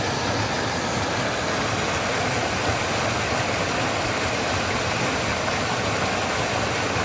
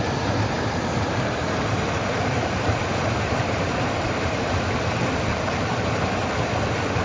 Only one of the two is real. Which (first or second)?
first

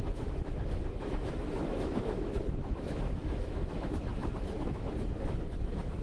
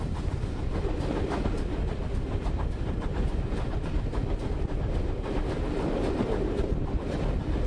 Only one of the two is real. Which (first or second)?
second